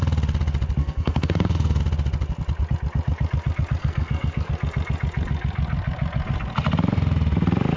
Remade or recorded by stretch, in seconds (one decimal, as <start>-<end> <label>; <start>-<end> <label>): 0.0-0.8 recorded; 0.8-1.8 remade; 1.8-3.8 recorded; 3.8-4.5 remade; 4.5-7.8 recorded